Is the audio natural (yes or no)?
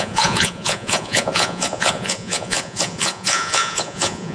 no